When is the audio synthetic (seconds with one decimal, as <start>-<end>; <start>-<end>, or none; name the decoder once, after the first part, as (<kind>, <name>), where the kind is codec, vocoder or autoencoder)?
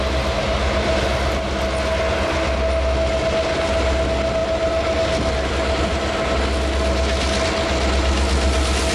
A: none